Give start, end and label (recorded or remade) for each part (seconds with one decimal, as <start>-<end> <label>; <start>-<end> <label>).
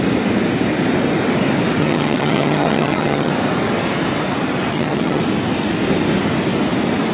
0.0-1.8 recorded; 1.8-3.3 remade; 3.3-4.7 recorded; 4.7-5.2 remade; 5.2-7.1 recorded